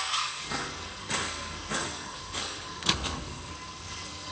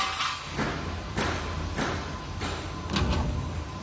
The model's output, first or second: first